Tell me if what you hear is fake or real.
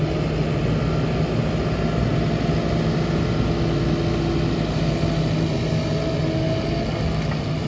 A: real